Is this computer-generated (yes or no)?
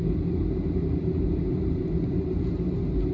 no